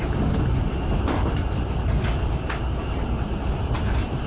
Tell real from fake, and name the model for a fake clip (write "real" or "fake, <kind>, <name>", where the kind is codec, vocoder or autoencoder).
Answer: real